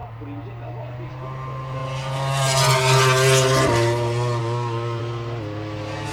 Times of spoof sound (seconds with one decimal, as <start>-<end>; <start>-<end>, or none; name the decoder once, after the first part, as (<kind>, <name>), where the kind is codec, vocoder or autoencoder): 4.4-5.0 (codec, DAC)